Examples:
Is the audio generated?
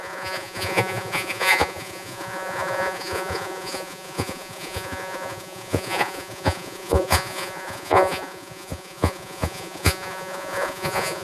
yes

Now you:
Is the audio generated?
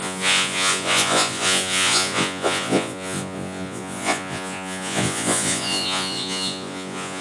yes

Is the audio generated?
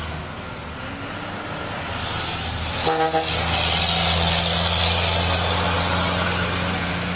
no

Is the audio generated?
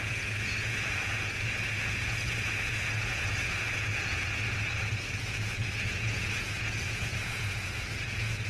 yes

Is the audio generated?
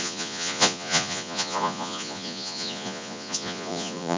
yes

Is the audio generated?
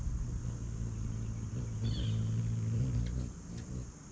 no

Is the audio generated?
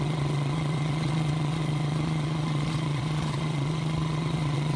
yes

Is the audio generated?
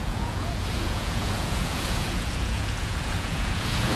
yes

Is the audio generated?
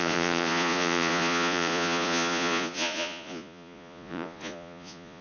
yes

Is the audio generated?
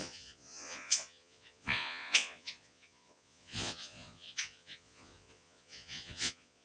yes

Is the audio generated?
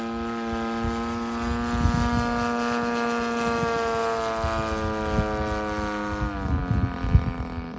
no